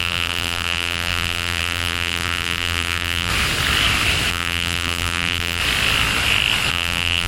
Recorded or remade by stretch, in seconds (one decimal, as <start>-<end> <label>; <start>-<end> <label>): 0.0-3.3 remade; 3.3-4.3 recorded; 4.3-5.6 remade; 5.6-6.7 recorded; 6.7-7.3 remade